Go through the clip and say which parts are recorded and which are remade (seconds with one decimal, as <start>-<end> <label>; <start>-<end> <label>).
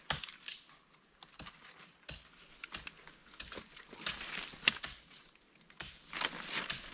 0.0-6.9 recorded